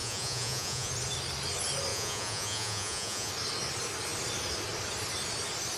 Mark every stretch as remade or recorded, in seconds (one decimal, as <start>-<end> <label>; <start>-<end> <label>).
0.0-0.9 remade; 0.9-1.9 recorded; 1.9-3.3 remade; 3.3-5.8 recorded

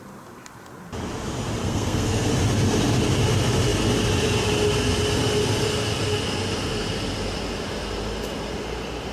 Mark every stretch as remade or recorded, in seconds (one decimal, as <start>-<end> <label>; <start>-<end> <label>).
0.0-1.6 recorded; 1.6-2.3 remade; 2.3-9.1 recorded

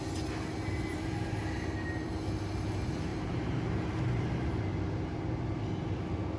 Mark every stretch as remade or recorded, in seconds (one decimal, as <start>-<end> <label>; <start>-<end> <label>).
0.0-0.9 recorded; 0.9-1.4 remade; 1.4-3.1 recorded; 3.1-4.6 remade; 4.6-6.4 recorded

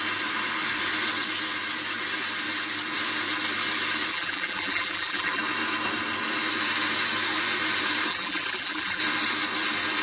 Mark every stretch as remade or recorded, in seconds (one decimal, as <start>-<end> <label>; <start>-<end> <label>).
0.0-4.1 recorded; 4.1-5.4 remade; 5.4-8.1 recorded; 8.1-9.0 remade; 9.0-10.0 recorded

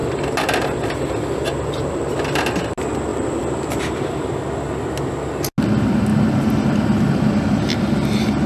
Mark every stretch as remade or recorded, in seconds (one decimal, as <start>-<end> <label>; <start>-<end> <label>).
0.0-3.1 recorded; 3.1-3.8 remade; 3.8-8.5 recorded

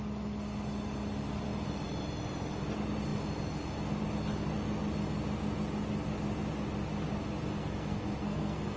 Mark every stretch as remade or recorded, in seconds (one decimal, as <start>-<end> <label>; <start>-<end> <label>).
0.0-7.5 recorded; 7.5-8.8 remade